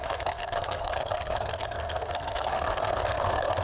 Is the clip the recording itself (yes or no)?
no